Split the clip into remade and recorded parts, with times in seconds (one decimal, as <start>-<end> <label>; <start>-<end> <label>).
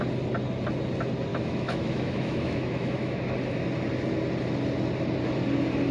0.0-1.3 recorded; 1.3-3.2 remade; 3.2-5.9 recorded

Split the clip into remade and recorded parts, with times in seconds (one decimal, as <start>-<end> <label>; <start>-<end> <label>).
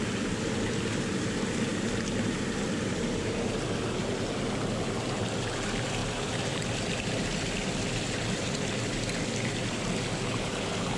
0.0-11.0 recorded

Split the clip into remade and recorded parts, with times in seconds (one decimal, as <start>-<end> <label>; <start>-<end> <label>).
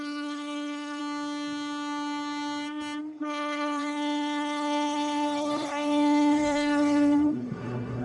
0.0-1.0 remade; 1.0-3.0 recorded; 3.0-8.0 remade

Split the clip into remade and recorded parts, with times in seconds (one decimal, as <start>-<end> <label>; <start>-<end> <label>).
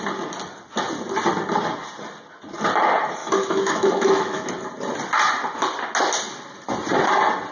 0.0-3.2 recorded; 3.2-4.5 remade; 4.5-7.5 recorded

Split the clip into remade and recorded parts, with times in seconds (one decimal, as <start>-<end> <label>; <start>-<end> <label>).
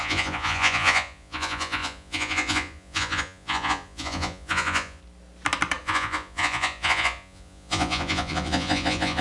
0.0-5.0 remade; 5.0-5.8 recorded; 5.8-9.2 remade